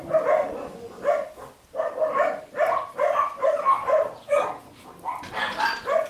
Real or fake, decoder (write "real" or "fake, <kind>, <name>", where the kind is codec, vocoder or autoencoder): real